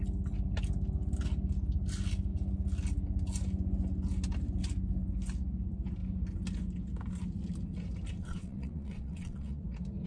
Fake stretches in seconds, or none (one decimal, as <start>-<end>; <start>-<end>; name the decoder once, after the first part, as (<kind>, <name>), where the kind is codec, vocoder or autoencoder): 8.2-9.6 (vocoder, WaveNeXt)